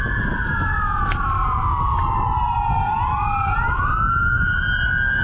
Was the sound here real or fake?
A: real